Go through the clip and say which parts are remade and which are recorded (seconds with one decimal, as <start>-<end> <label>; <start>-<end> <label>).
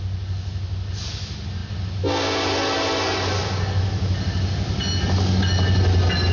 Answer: 0.0-6.3 recorded